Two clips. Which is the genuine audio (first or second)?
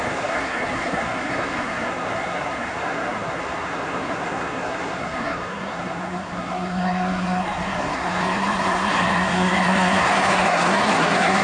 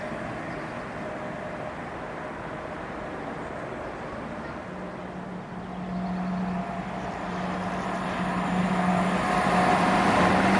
second